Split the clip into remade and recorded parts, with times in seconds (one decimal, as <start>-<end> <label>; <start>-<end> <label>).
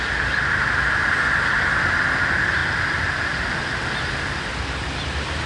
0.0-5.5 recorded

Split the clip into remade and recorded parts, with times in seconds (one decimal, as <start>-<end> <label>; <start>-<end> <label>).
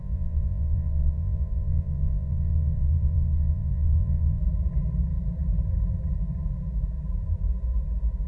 0.0-4.4 remade; 4.4-8.3 recorded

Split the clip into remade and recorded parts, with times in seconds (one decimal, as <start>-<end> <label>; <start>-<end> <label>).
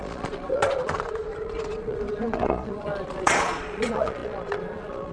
0.0-5.1 remade